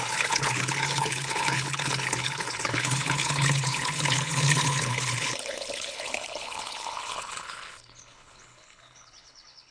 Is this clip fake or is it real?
fake